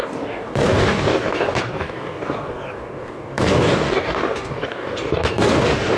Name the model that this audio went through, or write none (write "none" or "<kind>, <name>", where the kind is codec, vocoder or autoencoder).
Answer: codec, DAC